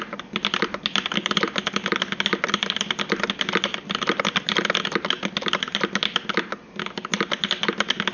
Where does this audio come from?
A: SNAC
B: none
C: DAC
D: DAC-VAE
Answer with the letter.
B